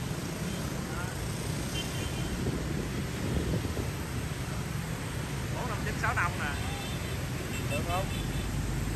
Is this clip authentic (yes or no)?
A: yes